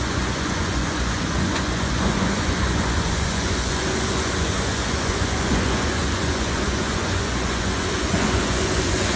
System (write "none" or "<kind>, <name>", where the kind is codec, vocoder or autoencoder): vocoder, Vocos